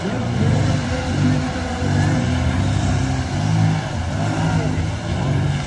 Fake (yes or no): no